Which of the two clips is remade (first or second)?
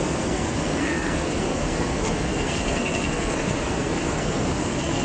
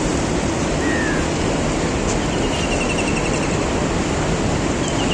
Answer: first